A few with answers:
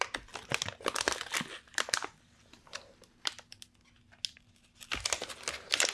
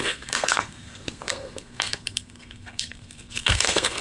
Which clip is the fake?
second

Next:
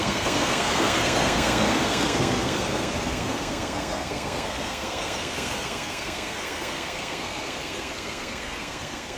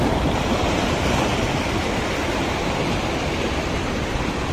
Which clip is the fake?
first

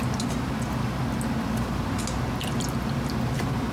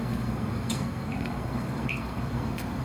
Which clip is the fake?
second